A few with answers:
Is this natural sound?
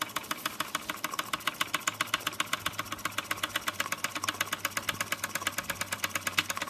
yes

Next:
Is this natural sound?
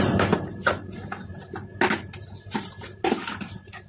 yes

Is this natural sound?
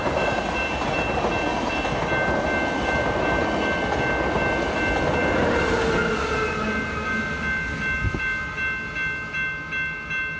yes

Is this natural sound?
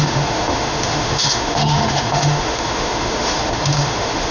no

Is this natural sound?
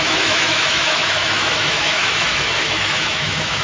no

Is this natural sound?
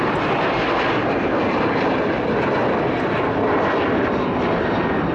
yes